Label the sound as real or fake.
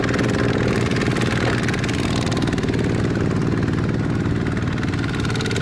real